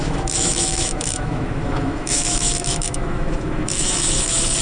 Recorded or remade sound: remade